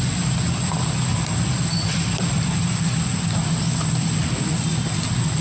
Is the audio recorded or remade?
recorded